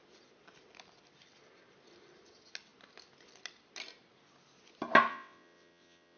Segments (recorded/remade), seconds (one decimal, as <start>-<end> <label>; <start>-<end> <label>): 0.0-5.1 recorded; 5.1-6.2 remade